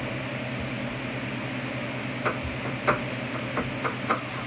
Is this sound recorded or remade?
recorded